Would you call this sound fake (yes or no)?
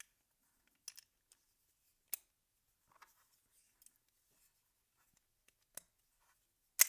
no